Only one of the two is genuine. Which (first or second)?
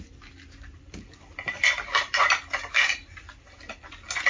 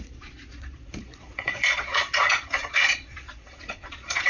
first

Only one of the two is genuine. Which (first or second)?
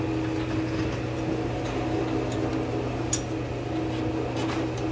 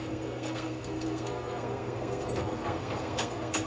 first